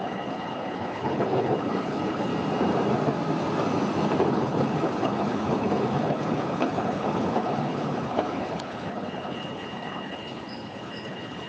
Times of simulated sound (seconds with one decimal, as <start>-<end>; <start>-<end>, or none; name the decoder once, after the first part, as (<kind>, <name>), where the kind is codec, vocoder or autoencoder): 0.0-2.3 (codec, HILCodec); 4.3-11.5